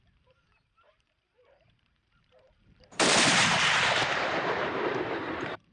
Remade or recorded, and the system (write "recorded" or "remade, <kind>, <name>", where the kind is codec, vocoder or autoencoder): remade, vocoder, BigVGAN v2